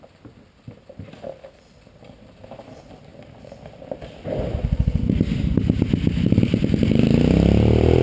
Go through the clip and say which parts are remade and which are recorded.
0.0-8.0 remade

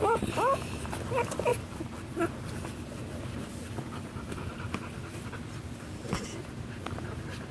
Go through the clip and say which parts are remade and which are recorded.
0.0-1.5 remade; 1.5-6.0 recorded; 6.0-7.5 remade

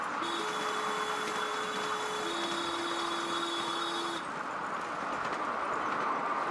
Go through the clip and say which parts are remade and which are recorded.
0.0-6.5 recorded

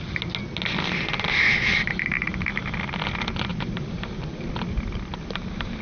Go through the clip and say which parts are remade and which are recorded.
0.0-3.5 recorded; 3.5-4.5 remade; 4.5-5.1 recorded; 5.1-5.8 remade

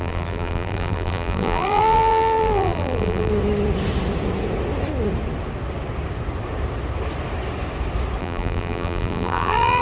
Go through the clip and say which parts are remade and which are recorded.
0.0-3.3 remade; 3.3-8.2 recorded; 8.2-9.8 remade

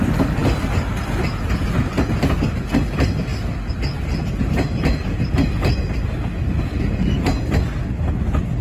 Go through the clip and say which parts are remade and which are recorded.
0.0-8.6 recorded

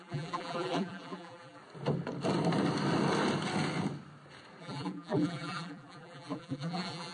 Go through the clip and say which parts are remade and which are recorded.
0.0-1.6 remade; 1.6-4.6 recorded; 4.6-7.1 remade

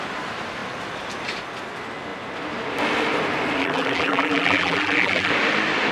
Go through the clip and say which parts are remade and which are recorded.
0.0-3.6 recorded; 3.6-5.3 remade; 5.3-5.9 recorded